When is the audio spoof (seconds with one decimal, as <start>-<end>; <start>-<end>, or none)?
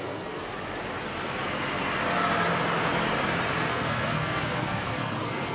0.0-0.4; 3.7-5.5